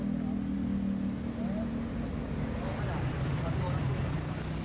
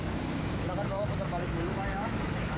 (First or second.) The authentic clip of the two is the first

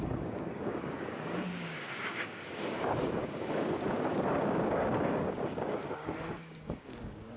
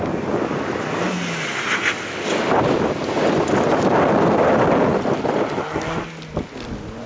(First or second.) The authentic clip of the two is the second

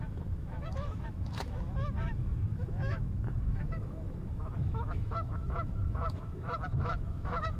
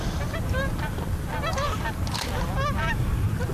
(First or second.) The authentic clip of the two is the second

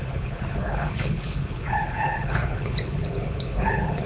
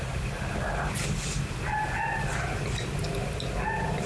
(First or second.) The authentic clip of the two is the second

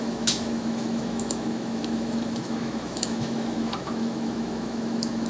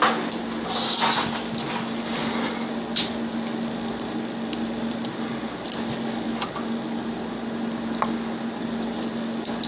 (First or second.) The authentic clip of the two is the second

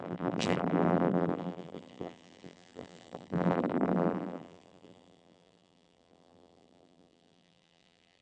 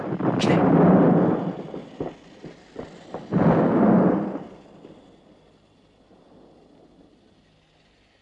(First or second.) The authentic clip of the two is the second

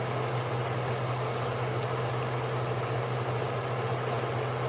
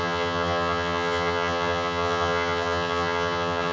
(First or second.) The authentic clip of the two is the first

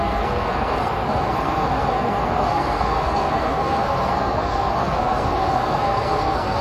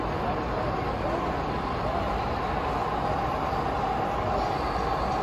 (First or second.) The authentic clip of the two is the second